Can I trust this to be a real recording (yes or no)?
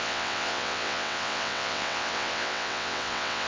no